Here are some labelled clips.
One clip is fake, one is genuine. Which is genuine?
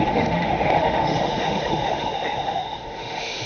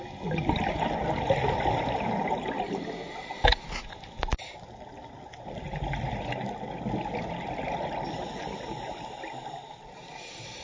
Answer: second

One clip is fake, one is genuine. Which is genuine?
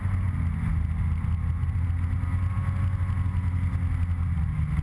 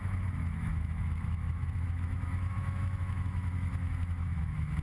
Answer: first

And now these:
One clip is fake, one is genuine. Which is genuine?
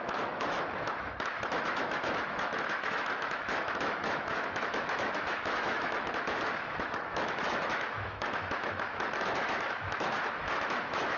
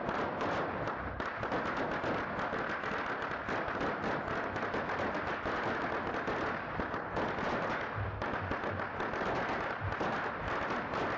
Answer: second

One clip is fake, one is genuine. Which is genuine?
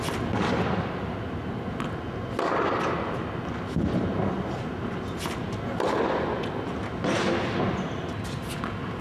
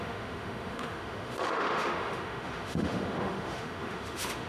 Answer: first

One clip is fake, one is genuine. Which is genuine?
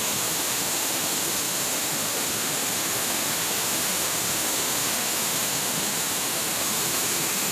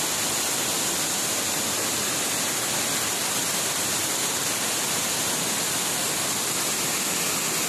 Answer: second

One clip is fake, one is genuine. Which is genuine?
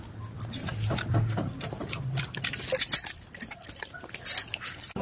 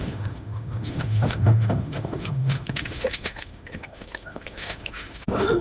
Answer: first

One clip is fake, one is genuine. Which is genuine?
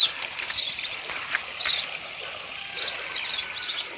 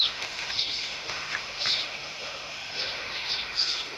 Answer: first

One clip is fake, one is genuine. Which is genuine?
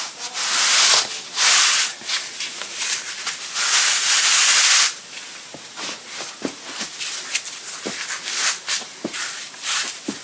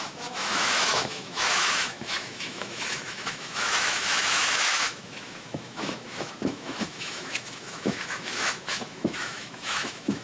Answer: first